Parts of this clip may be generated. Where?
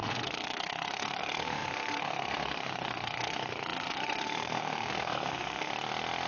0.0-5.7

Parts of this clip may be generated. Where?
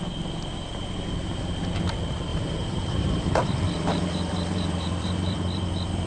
2.3-6.1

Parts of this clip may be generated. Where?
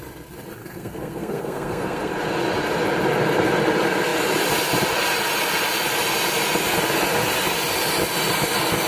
0.6-2.1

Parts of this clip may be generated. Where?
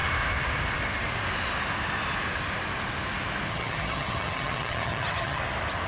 3.5-5.4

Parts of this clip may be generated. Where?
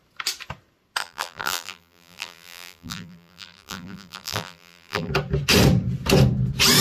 1.0-5.1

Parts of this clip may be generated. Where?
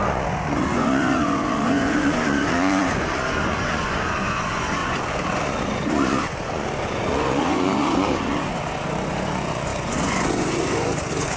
0.0-11.4